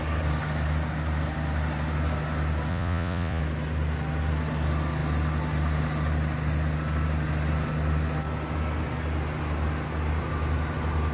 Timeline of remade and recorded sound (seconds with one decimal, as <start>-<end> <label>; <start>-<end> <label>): 0.0-2.7 recorded; 2.7-3.4 remade; 3.4-11.1 recorded